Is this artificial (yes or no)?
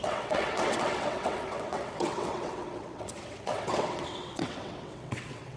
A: yes